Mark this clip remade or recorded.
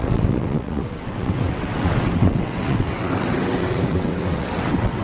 remade